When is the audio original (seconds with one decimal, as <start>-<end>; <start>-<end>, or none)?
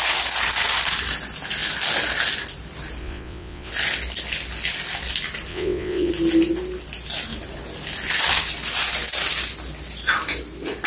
0.0-3.0; 3.7-5.5; 6.1-10.9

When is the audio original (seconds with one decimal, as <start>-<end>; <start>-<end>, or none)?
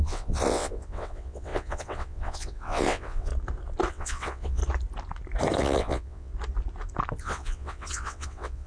3.3-3.9; 4.6-5.6; 6.3-7.2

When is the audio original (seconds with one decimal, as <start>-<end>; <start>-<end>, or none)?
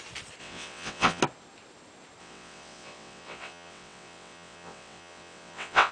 0.0-0.4; 1.2-2.2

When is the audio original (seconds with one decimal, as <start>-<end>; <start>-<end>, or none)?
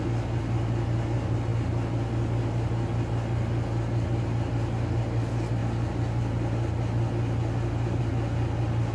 0.0-8.9